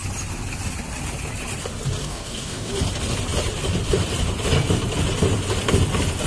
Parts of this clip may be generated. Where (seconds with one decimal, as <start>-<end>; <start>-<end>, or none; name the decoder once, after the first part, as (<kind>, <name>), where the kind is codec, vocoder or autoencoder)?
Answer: 2.0-2.7 (codec, DAC)

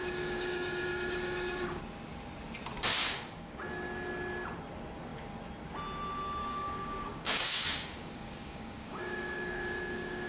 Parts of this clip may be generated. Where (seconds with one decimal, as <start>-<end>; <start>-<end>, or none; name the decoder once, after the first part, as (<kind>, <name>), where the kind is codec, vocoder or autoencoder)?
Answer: 0.0-1.8 (codec, DAC); 3.0-3.6; 6.4-10.3